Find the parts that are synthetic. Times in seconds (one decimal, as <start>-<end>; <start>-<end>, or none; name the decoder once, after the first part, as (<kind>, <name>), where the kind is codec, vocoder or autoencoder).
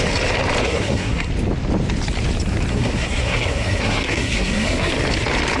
0.6-1.3 (codec, SNAC); 2.7-4.9